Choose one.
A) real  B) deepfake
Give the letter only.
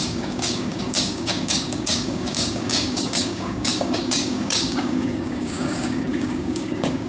B